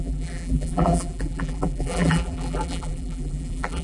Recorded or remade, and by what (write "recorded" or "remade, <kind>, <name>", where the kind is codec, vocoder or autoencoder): remade, vocoder, BigVGAN v2